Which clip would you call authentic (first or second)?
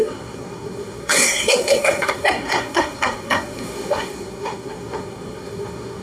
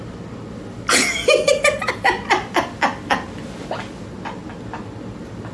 second